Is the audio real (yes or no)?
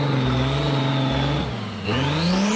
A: yes